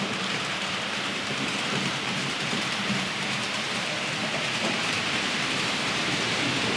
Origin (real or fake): fake